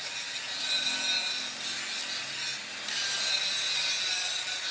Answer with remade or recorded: recorded